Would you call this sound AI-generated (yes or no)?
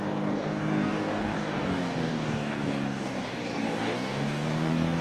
yes